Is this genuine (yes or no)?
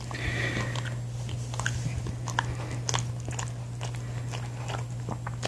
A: yes